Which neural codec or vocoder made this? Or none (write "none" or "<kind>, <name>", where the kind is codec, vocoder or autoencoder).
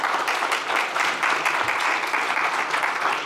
none